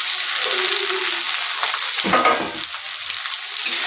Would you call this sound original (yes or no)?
yes